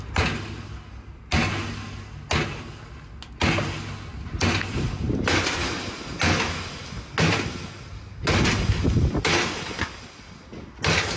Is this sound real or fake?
real